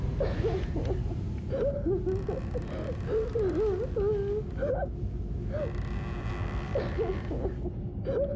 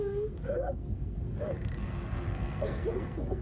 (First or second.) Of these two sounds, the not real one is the second